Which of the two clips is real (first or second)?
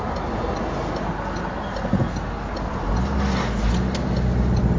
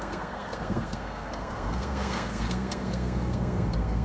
first